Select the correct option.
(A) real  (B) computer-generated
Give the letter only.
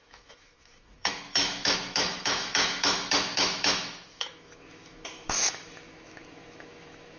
B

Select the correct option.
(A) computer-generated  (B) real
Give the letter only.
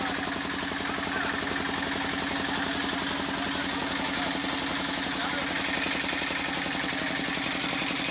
B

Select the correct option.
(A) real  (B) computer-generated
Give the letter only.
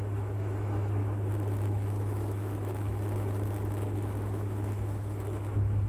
B